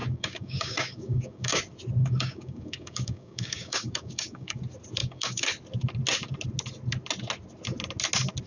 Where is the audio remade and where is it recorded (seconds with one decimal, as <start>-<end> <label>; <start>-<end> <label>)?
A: 0.0-1.6 remade; 1.6-2.0 recorded; 2.0-4.6 remade; 4.6-5.0 recorded; 5.0-5.5 remade; 5.5-8.5 recorded